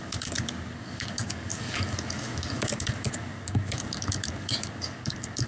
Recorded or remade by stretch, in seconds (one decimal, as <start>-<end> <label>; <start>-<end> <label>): 0.0-5.5 remade